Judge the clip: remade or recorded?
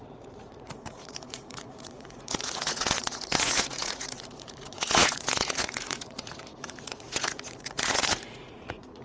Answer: remade